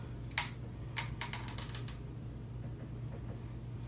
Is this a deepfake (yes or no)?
no